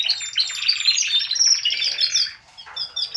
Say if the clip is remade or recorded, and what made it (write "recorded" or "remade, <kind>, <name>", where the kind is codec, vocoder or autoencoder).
recorded